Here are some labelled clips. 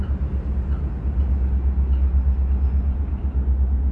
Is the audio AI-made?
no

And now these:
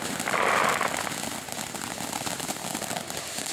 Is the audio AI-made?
no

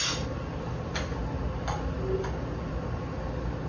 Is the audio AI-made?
no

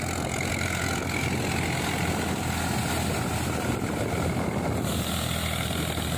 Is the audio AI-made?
no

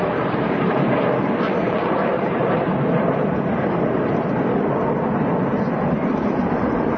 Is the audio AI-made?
yes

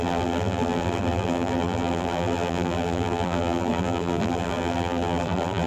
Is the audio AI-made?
yes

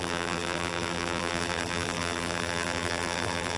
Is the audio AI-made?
yes